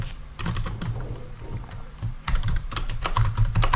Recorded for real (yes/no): no